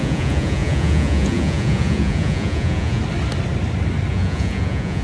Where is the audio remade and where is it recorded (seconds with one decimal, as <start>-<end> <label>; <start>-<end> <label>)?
0.0-3.0 remade; 3.0-4.1 recorded; 4.1-5.0 remade